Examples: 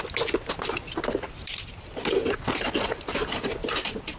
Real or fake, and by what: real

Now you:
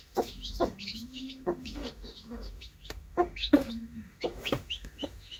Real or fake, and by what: fake, autoencoder, DAC-VAE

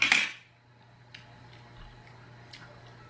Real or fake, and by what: real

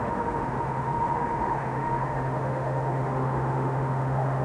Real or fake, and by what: fake, autoencoder, DAC-VAE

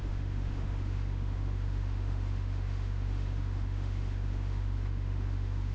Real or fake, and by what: fake, autoencoder, DAC-VAE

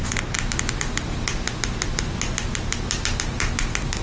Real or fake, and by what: real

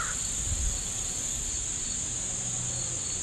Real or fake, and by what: real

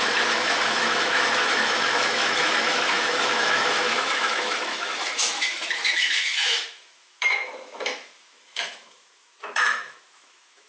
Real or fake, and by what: fake, autoencoder, DAC-VAE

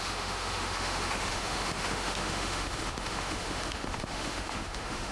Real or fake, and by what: fake, autoencoder, DAC-VAE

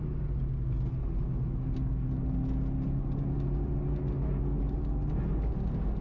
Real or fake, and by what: real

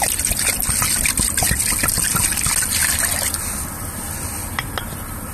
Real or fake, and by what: real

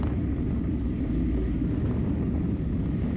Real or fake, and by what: real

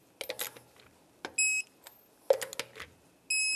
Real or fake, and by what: real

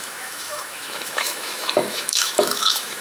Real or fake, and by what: fake, autoencoder, DAC-VAE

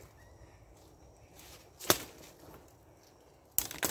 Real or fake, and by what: real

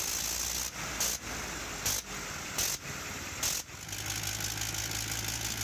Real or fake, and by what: real